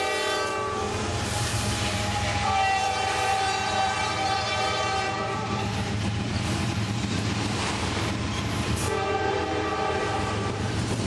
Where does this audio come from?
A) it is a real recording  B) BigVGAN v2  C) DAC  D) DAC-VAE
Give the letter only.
B